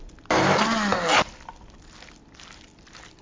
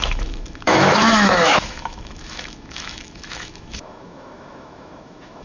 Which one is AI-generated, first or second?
second